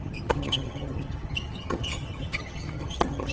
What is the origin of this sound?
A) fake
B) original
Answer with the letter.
A